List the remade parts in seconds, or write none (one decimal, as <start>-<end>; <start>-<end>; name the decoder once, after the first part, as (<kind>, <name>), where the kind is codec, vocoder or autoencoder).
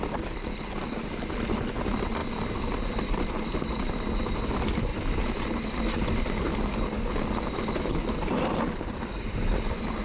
none